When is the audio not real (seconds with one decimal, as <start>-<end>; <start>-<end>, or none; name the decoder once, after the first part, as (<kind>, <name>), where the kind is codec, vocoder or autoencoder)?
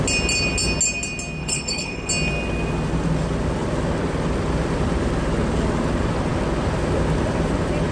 1.4-2.1 (codec, HILCodec)